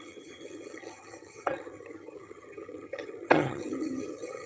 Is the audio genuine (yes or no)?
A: no